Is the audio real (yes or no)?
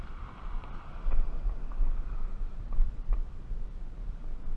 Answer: no